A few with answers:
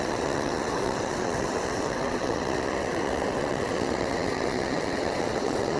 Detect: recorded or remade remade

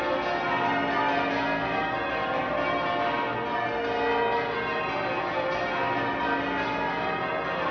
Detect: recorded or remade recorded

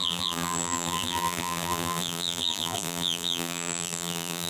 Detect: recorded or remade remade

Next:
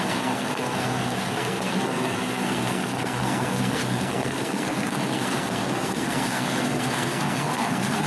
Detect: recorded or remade remade